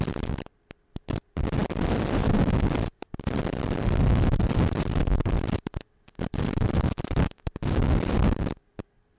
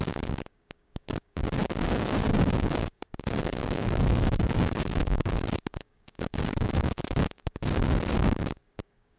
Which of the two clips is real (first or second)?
first